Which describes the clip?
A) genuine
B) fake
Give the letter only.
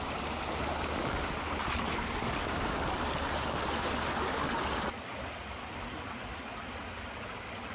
A